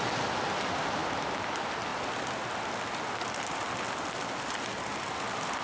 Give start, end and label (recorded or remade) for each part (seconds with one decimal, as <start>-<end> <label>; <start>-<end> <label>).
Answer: 0.0-5.6 recorded